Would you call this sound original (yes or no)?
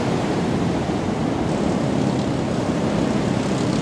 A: yes